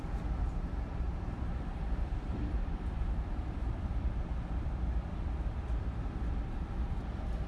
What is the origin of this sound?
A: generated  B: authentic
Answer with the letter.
A